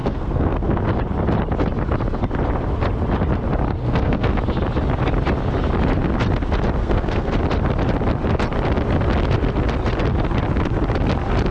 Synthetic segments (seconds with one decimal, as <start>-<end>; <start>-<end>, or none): 0.0-0.8; 3.8-4.4; 6.8-7.3